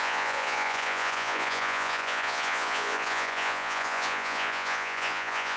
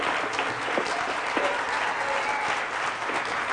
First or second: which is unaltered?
second